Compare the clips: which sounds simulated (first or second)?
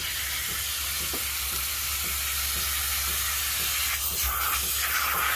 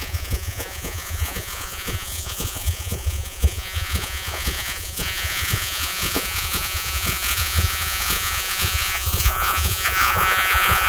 second